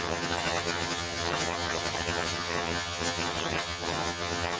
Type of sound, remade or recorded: remade